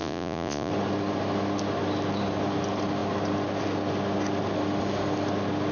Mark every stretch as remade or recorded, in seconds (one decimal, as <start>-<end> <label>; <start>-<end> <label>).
0.0-0.7 remade; 0.7-5.7 recorded